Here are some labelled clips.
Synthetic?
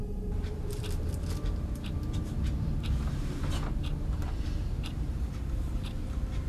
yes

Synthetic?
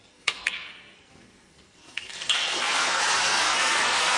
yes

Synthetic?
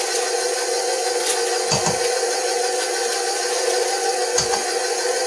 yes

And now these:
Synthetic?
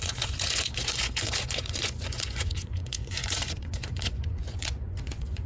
yes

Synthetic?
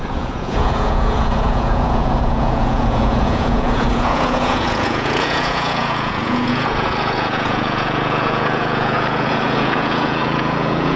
yes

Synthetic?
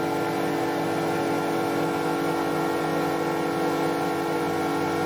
no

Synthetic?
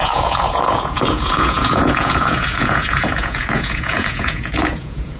yes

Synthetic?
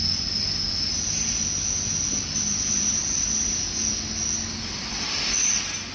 no